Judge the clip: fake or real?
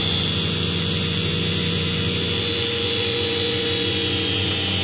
fake